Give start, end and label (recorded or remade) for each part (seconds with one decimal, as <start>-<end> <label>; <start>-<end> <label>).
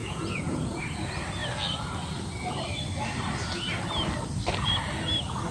0.0-0.8 remade; 0.8-5.5 recorded